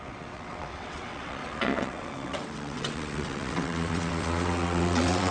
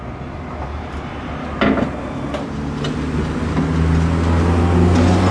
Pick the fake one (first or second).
first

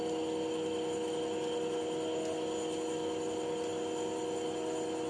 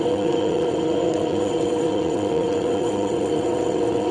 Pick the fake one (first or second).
second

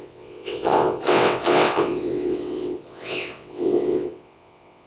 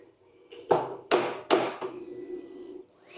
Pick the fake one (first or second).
first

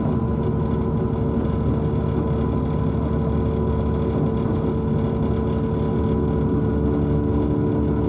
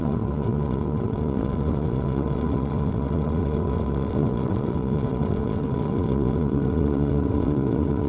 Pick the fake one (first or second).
second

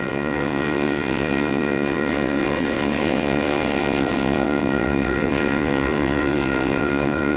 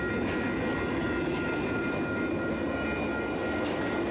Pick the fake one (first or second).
first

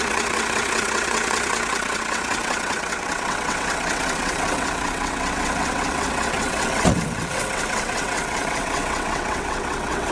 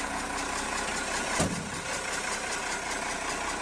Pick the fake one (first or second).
first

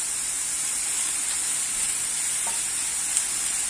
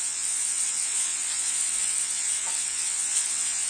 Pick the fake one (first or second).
second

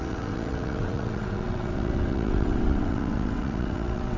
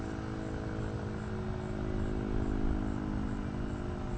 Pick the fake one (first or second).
first